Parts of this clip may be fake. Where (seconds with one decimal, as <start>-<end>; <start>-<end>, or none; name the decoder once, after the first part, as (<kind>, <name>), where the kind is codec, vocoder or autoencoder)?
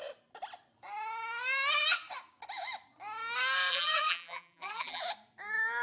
3.7-5.0 (vocoder, BigVGAN v2)